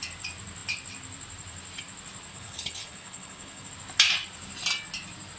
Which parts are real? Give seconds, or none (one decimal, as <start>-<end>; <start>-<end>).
0.0-2.3; 3.7-5.4